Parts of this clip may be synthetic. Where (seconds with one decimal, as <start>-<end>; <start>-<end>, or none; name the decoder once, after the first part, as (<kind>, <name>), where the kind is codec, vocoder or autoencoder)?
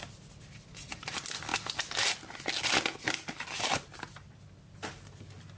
none